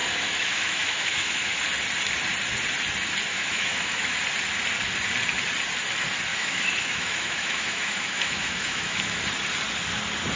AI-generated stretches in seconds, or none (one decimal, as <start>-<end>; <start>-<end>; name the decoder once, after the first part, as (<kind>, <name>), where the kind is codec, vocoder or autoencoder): 0.0-1.6 (autoencoder, DAC-VAE); 3.3-4.2; 6.3-9.2